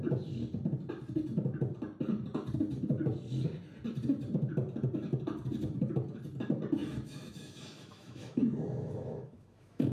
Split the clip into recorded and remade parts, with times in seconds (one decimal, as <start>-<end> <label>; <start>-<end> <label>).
0.0-6.8 recorded; 6.8-9.9 remade